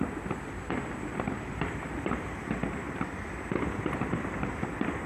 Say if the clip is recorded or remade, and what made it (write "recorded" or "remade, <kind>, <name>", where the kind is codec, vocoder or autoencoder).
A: remade, vocoder, BigVGAN v2